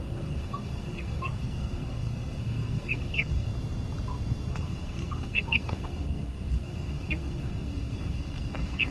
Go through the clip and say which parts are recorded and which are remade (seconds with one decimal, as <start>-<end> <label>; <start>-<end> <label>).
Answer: 0.0-3.5 remade; 3.5-4.5 recorded; 4.5-8.9 remade